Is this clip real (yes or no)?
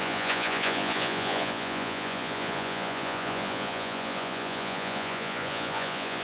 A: no